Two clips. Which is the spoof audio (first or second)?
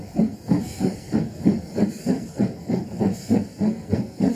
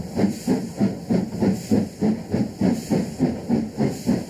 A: first